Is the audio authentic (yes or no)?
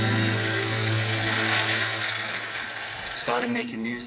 no